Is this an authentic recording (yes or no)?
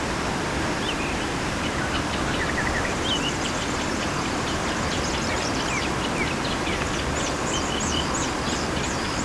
no